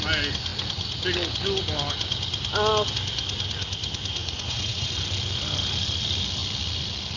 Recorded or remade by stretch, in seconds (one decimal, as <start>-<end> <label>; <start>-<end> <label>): 0.0-4.2 recorded; 4.2-4.9 remade; 4.9-7.2 recorded